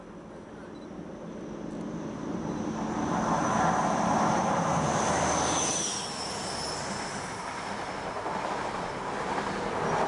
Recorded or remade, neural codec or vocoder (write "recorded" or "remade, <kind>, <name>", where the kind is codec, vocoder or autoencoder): recorded